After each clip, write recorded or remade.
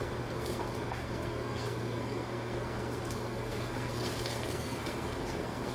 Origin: remade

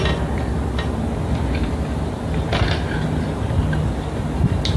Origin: recorded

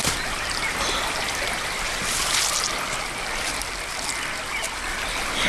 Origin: recorded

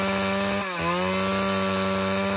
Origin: recorded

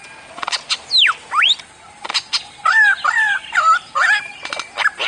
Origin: recorded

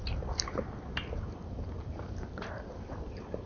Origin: recorded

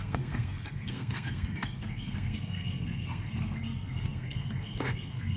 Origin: remade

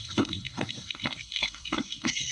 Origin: remade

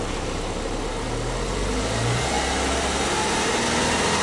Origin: recorded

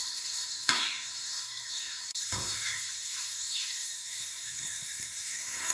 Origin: remade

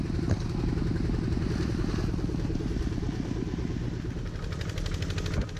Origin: recorded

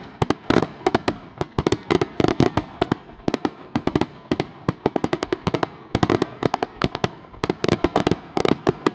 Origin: remade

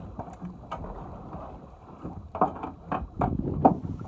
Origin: recorded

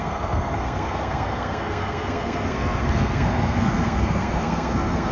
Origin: remade